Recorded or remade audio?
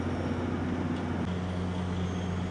recorded